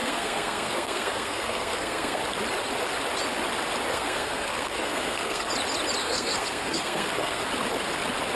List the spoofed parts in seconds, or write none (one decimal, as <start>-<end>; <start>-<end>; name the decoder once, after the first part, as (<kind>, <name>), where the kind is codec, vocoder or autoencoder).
0.0-2.2 (codec, SNAC); 3.9-5.5; 6.0-7.4